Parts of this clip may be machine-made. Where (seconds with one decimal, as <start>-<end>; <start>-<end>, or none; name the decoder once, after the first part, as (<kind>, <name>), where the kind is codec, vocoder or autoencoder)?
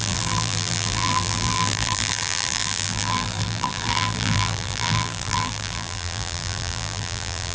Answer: 0.0-7.5 (vocoder, BigVGAN v2)